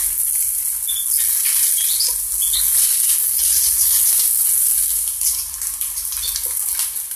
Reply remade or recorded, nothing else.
recorded